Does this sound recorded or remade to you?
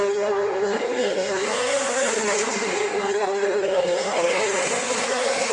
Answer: remade